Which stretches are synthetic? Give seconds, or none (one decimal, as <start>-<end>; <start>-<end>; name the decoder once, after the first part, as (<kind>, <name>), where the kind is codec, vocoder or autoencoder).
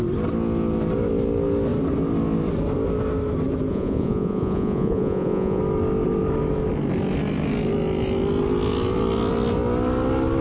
3.7-5.6 (vocoder, Vocos)